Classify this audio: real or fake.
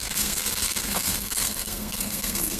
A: fake